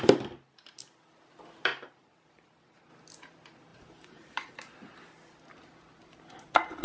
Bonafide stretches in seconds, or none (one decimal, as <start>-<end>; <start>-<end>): 0.0-1.7; 2.9-3.7; 4.9-6.8